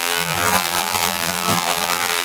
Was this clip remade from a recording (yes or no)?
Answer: yes